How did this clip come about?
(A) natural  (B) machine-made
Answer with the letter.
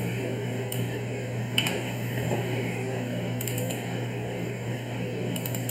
B